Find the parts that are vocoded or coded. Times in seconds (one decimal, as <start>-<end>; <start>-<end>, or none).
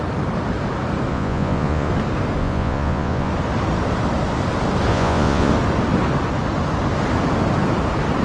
1.1-1.9; 2.4-3.3; 4.9-5.5